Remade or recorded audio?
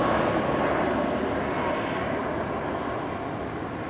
recorded